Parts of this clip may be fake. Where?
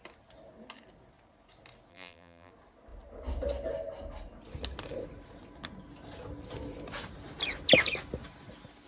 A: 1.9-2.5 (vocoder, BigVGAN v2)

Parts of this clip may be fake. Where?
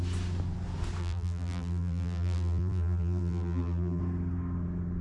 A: 1.0-4.0 (vocoder, BigVGAN v2)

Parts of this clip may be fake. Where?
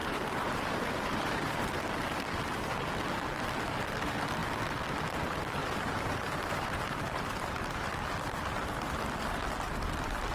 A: 0.0-1.7 (vocoder, BigVGAN v2); 5.6-7.9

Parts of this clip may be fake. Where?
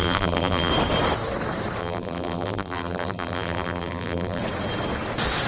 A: 0.0-0.7 (vocoder, BigVGAN v2); 1.8-4.4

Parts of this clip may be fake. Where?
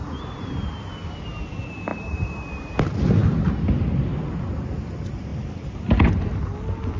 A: 1.9-2.7 (vocoder, BigVGAN v2); 5.3-6.1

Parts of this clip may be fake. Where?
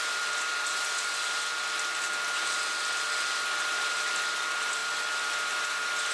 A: 4.8-5.5 (vocoder, BigVGAN v2)